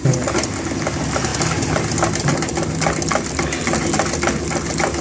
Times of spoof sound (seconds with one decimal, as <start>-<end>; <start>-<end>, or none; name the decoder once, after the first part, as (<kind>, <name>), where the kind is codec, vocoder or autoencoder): none